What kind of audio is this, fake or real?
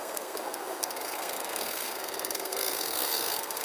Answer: fake